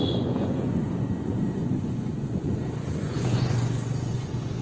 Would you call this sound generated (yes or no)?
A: yes